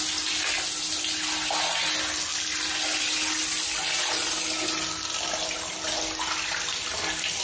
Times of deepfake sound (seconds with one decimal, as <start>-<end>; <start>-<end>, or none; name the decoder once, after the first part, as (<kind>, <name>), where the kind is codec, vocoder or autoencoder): none